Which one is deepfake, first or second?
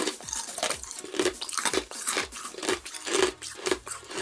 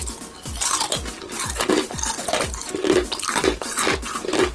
first